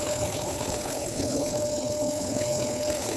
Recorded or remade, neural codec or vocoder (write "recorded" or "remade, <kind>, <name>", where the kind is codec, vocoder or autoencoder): remade, codec, HILCodec